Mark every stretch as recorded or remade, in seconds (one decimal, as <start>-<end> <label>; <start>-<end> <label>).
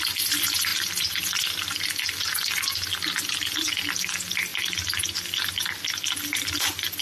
0.0-7.0 recorded